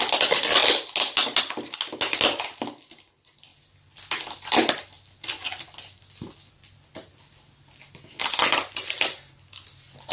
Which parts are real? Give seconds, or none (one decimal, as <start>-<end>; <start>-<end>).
0.0-10.1